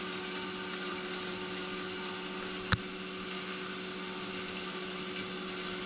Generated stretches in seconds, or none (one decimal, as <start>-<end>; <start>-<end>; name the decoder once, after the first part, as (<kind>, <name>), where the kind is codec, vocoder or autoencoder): none